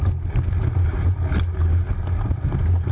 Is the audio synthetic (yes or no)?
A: no